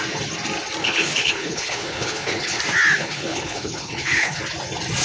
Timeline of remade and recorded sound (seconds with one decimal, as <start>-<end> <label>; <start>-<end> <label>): 0.0-0.8 recorded; 0.8-2.6 remade; 2.6-3.0 recorded; 3.0-4.4 remade; 4.4-5.0 recorded